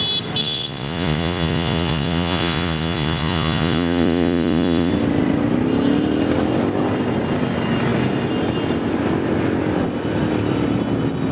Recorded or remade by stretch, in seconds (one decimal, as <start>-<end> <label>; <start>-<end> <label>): 0.0-0.4 recorded; 0.4-4.9 remade; 4.9-11.3 recorded